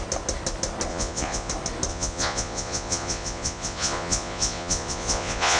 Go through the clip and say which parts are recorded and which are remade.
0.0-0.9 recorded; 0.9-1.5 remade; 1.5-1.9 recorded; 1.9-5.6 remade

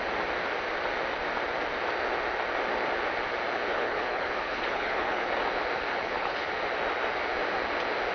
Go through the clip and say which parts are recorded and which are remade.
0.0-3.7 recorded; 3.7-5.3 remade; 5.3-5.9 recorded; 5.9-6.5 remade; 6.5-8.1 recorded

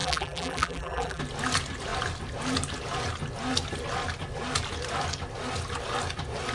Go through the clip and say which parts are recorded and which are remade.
0.0-1.2 remade; 1.2-6.5 recorded